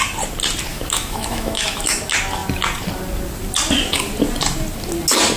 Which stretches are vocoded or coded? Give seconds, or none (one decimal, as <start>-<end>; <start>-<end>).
0.7-2.0